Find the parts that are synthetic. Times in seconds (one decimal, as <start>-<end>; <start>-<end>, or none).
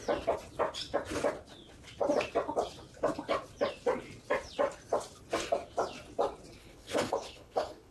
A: 6.6-7.9